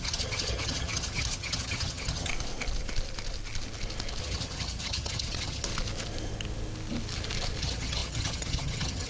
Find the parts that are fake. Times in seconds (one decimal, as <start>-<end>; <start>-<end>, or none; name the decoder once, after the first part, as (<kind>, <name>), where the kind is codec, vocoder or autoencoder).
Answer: 0.0-2.3 (vocoder, HiFi-GAN); 4.2-5.7; 7.6-9.1